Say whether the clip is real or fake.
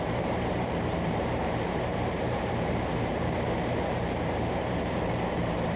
fake